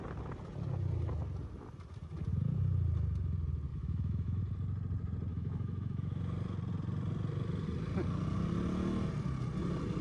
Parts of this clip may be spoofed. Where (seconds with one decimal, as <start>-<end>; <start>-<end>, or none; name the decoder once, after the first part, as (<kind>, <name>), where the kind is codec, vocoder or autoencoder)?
3.7-4.4 (autoencoder, DAC-VAE); 5.3-6.2